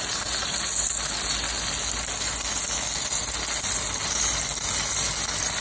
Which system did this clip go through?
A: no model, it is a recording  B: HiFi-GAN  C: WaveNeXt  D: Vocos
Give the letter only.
A